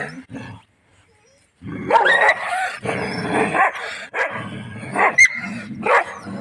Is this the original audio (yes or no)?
yes